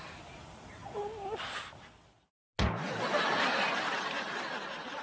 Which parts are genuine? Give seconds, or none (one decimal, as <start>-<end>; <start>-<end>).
0.0-5.0